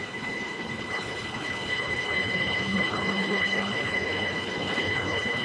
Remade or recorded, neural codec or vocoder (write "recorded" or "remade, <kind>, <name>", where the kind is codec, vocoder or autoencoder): remade, codec, HILCodec